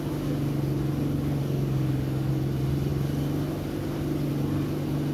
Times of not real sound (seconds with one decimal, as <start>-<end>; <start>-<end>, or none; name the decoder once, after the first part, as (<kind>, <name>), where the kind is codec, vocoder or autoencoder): 1.4-2.3 (codec, DAC)